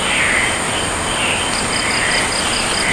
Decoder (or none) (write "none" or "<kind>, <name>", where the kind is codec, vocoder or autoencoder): none